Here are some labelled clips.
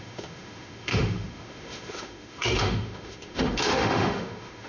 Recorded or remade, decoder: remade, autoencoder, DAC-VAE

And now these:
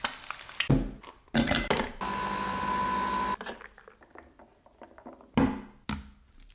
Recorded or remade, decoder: recorded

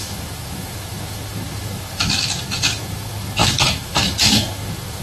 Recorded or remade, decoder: remade, autoencoder, DAC-VAE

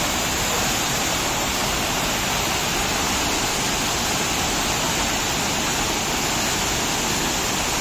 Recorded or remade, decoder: recorded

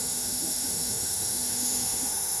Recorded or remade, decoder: remade, autoencoder, DAC-VAE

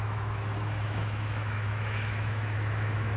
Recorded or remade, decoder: remade, autoencoder, DAC-VAE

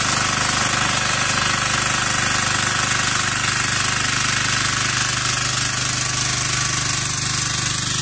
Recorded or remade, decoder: recorded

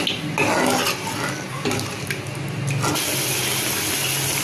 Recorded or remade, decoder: recorded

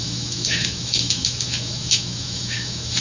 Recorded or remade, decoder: remade, autoencoder, DAC-VAE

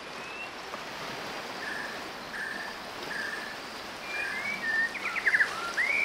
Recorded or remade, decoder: recorded